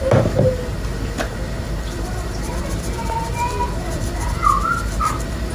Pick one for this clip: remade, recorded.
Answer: remade